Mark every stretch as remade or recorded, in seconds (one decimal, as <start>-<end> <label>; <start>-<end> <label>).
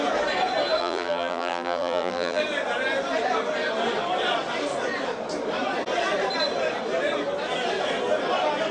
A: 0.0-0.8 recorded; 0.8-2.4 remade; 2.4-8.7 recorded